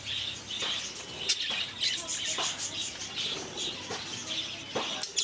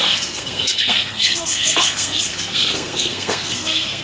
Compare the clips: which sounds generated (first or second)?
second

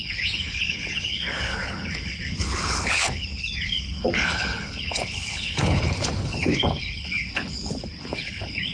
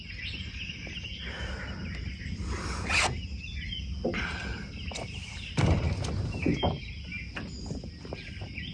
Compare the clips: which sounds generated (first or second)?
first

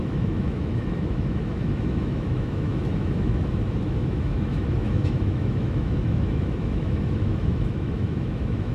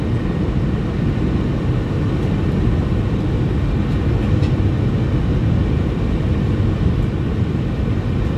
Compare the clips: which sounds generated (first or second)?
first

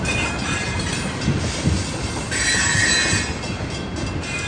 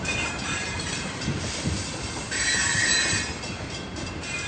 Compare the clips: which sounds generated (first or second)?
second